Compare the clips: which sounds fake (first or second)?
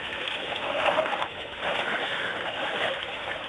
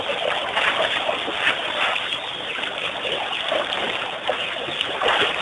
first